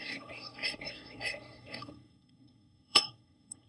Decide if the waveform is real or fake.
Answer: fake